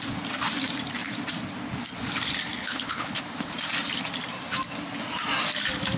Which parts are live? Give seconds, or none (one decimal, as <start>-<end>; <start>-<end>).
0.0-2.6; 3.2-6.0